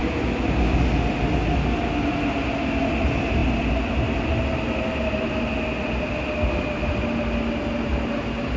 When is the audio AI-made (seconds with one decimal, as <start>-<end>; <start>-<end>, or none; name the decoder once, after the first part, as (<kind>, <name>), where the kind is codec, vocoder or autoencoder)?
none